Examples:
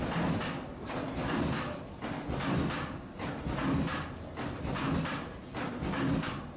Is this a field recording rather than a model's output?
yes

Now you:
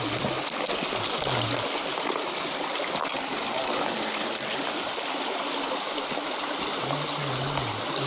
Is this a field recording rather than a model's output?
yes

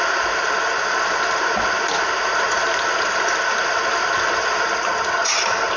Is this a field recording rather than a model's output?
yes